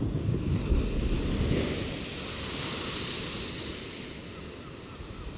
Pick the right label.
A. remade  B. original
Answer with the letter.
B